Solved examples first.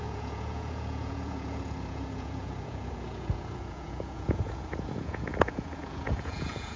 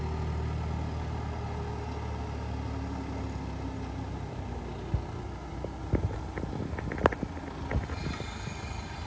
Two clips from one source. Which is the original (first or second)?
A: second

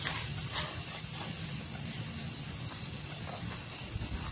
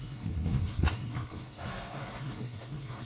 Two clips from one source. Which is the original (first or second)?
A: first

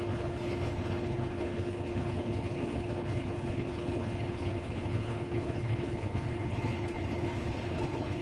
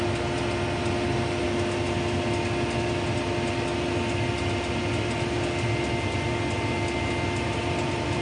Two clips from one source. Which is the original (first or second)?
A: second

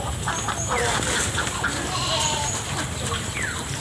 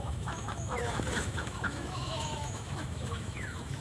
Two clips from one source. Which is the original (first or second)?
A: first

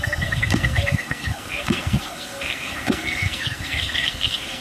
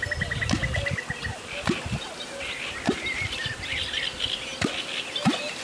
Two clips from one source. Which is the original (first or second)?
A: second